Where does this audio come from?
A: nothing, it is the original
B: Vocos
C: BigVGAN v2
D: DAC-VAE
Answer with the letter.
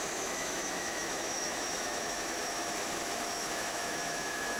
D